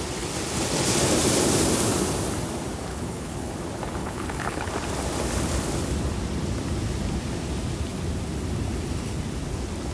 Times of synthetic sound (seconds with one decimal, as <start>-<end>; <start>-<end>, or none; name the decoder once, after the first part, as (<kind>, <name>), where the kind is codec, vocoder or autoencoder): 2.9-3.5 (codec, HILCodec); 4.0-4.7